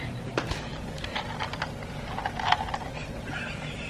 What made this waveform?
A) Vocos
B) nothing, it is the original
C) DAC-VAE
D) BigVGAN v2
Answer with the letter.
B